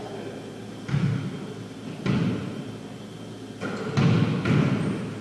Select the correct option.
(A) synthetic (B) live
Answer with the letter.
B